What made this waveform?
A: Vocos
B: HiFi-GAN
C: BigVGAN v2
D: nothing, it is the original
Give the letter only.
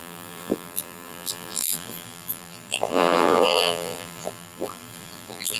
C